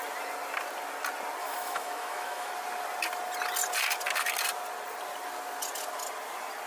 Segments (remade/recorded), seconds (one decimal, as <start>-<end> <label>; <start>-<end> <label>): 0.0-1.4 recorded; 1.4-2.5 remade; 2.5-6.7 recorded